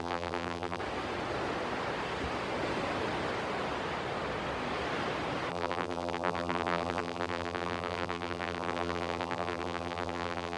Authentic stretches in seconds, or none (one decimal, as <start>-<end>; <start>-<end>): 0.8-5.5